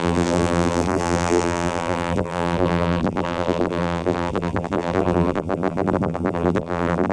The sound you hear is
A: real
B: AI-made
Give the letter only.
B